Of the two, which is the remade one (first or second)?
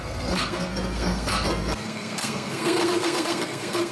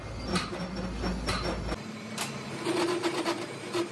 first